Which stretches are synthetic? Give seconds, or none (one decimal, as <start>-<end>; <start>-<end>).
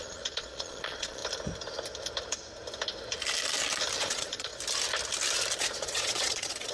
0.0-1.2; 4.0-4.5; 5.6-6.7